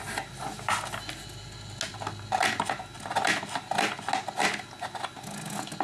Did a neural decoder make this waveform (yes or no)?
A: no